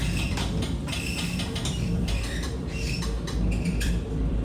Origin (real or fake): fake